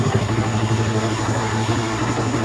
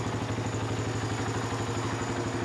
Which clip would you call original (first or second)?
second